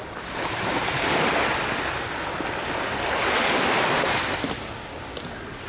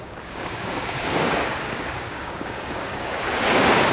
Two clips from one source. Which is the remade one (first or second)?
second